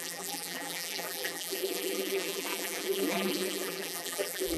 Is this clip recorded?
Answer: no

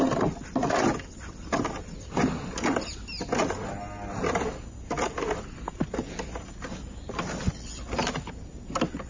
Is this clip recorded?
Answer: yes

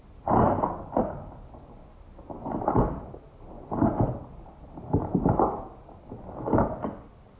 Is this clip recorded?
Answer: yes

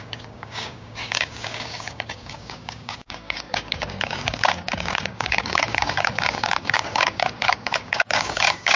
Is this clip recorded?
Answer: no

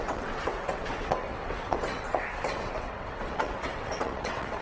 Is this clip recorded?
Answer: no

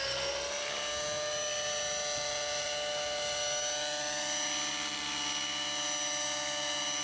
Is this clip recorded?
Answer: yes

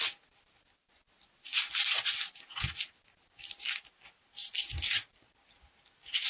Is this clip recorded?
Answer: yes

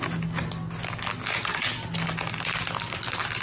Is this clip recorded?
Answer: yes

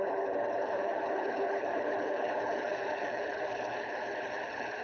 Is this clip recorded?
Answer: no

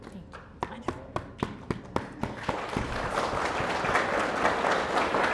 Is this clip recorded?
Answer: yes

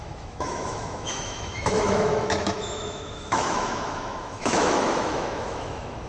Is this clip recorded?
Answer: no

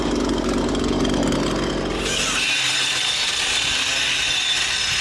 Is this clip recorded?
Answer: yes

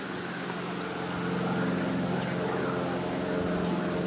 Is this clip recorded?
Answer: yes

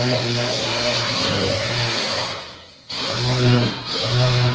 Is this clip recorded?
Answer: no